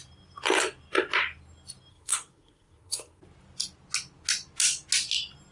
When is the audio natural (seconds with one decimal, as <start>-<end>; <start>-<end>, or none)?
0.0-1.9; 3.2-5.5